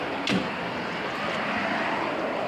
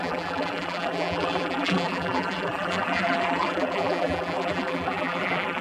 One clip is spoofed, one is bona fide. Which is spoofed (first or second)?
second